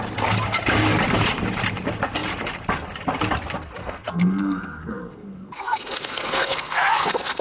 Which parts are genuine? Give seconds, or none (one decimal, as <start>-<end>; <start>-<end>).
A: 0.0-3.8